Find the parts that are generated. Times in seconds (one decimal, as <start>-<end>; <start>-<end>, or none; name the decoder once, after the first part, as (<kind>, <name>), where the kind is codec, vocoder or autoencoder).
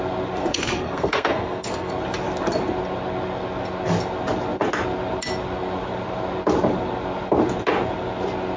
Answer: 0.4-1.9 (codec, SNAC)